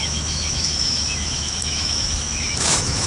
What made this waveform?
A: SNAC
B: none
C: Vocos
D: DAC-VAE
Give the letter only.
D